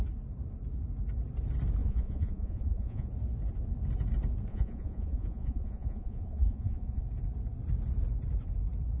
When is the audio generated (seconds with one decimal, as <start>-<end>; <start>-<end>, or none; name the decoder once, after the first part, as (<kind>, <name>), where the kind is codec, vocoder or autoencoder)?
1.8-3.1 (vocoder, Vocos); 4.5-7.0